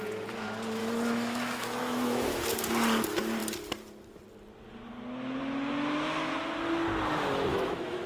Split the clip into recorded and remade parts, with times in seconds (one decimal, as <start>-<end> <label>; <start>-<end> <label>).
0.0-0.8 recorded; 0.8-2.4 remade; 2.4-7.5 recorded; 7.5-8.1 remade